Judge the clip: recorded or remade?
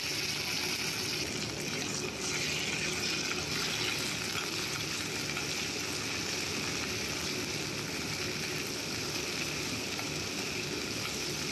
recorded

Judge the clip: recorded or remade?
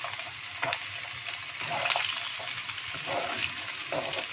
recorded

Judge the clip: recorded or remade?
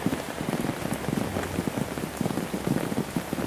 recorded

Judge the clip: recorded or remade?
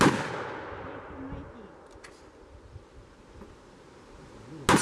recorded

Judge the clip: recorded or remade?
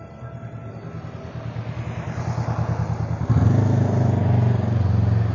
recorded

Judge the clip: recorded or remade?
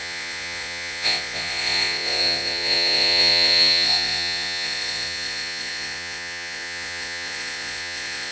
remade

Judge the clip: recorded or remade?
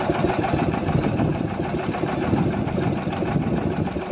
recorded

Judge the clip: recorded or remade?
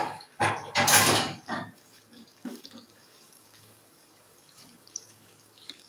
remade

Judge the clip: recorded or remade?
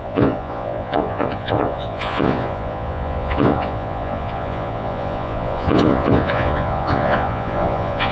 remade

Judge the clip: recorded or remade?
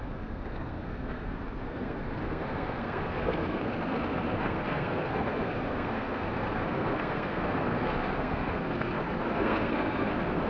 remade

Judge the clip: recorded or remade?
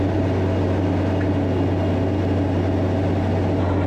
recorded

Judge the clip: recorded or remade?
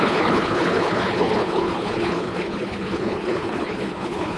remade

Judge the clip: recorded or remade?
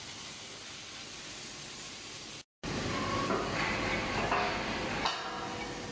recorded